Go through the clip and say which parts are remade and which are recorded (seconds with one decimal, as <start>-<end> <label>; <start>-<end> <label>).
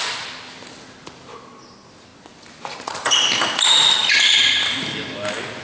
0.0-5.6 recorded